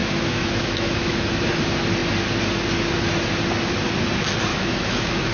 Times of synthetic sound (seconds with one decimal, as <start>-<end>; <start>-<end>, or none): 0.0-1.4; 4.5-5.3